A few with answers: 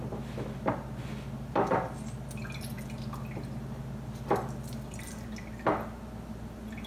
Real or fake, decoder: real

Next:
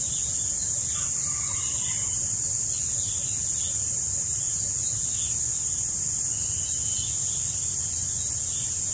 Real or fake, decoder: real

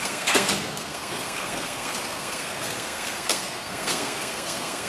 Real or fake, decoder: fake, codec, SNAC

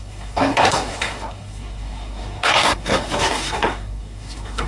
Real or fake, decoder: fake, codec, SNAC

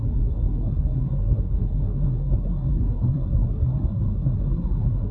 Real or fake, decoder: fake, codec, SNAC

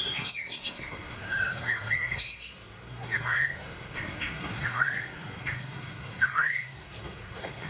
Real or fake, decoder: fake, codec, SNAC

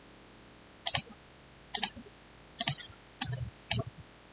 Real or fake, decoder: real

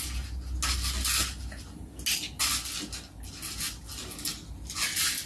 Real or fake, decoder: real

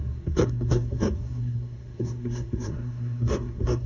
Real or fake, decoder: fake, codec, SNAC